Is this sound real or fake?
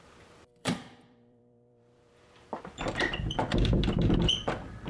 fake